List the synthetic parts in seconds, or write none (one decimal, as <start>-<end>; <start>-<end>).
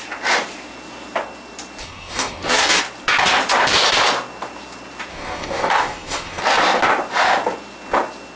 1.8-2.8; 5.1-6.4